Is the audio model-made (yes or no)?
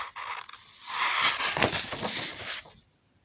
no